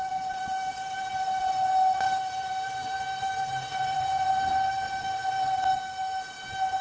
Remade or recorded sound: recorded